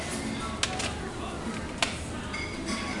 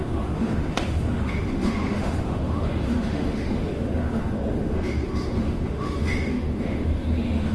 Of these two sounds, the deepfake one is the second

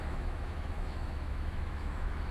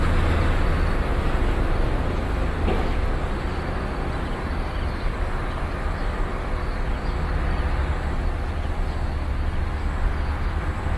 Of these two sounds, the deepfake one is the first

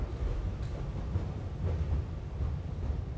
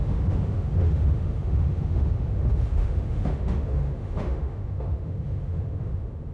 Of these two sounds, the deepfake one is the second